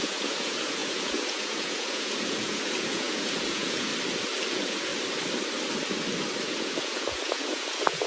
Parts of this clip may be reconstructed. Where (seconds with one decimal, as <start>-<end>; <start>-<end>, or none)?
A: 0.0-3.9; 4.5-4.9; 6.5-8.1